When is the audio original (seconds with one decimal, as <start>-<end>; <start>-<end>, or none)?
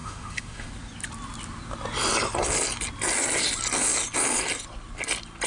0.7-5.5